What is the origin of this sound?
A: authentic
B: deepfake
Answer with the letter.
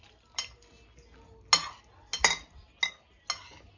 A